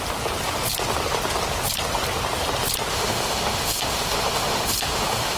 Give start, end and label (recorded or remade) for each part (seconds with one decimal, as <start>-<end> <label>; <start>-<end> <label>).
0.0-2.9 recorded; 2.9-5.4 remade